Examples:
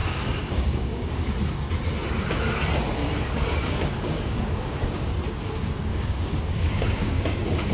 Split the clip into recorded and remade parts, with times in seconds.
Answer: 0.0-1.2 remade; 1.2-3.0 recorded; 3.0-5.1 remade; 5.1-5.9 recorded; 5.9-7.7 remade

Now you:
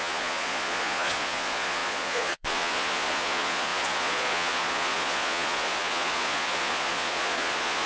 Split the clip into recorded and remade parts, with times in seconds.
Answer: 0.0-7.9 remade

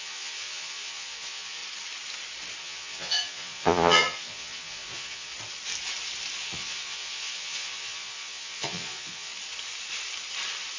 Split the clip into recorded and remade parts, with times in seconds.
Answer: 0.0-1.6 remade; 1.6-2.6 recorded; 2.6-5.3 remade; 5.3-6.4 recorded; 6.4-9.3 remade; 9.3-10.8 recorded

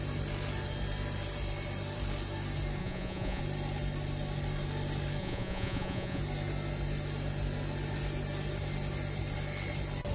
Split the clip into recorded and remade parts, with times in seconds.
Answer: 0.0-2.8 recorded; 2.8-3.4 remade; 3.4-5.2 recorded; 5.2-6.2 remade; 6.2-10.1 recorded

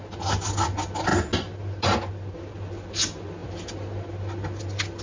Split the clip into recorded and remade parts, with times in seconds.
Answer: 0.0-5.0 recorded

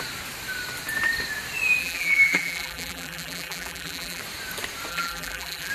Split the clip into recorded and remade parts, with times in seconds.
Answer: 0.0-1.8 recorded; 1.8-4.2 remade; 4.2-4.9 recorded; 4.9-5.7 remade